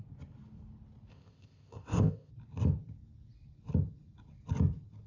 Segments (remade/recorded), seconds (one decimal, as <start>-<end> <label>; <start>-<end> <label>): 0.0-1.1 recorded; 1.1-2.3 remade; 2.3-5.1 recorded